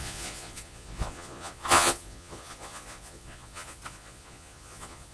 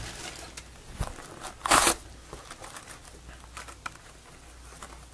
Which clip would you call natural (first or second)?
second